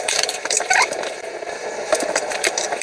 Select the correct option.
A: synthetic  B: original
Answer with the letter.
A